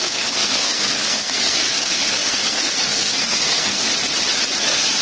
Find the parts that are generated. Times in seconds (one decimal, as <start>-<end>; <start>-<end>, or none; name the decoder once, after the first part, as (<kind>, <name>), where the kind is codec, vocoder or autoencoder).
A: 0.0-3.9 (codec, SNAC); 4.6-5.0